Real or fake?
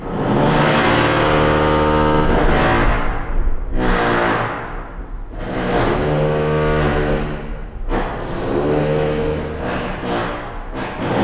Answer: real